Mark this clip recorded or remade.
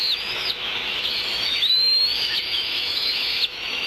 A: remade